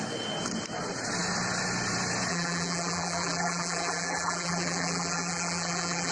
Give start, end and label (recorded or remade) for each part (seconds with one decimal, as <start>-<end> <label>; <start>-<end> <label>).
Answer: 0.0-2.3 recorded; 2.3-6.1 remade